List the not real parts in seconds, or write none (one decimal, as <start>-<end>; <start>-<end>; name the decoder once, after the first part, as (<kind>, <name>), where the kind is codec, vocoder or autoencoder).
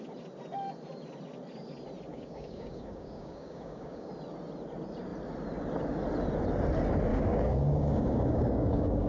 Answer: 2.1-4.1 (codec, DAC); 7.1-9.1